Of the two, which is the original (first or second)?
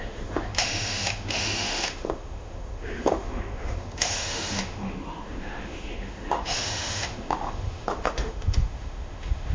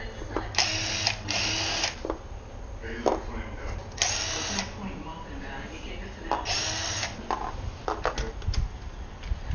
second